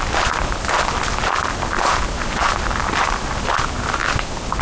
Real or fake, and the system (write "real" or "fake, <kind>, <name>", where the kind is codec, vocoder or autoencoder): real